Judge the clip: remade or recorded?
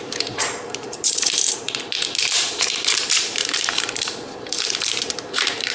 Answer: remade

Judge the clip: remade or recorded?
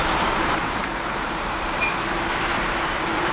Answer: remade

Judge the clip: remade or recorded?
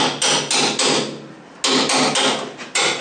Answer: recorded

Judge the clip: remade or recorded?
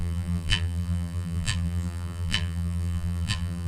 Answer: remade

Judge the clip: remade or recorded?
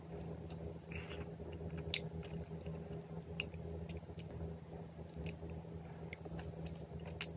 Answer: recorded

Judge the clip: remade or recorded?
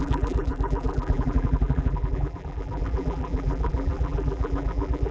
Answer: remade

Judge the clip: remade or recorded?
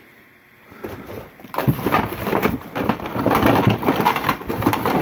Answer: remade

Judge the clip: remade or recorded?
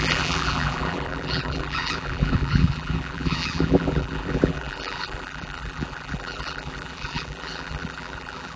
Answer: remade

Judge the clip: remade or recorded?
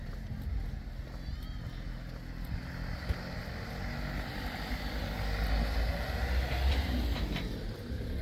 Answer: recorded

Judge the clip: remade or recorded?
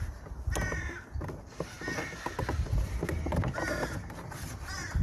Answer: recorded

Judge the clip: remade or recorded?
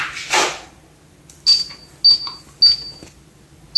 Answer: recorded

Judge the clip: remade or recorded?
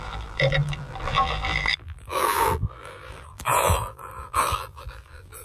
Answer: remade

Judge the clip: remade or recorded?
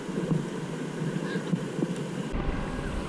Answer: remade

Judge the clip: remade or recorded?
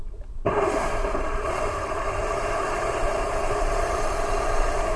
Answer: remade